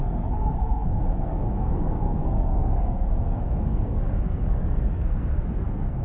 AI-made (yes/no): yes